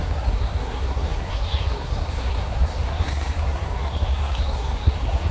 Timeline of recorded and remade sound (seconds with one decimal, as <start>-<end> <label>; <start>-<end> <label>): 0.0-5.3 remade